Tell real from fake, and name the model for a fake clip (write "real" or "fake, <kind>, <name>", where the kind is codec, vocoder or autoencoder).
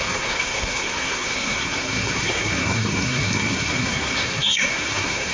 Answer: fake, codec, SNAC